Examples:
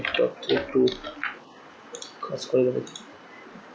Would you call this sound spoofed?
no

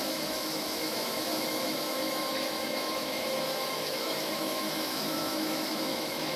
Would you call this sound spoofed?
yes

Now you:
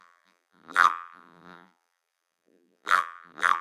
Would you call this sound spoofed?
yes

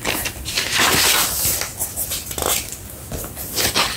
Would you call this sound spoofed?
no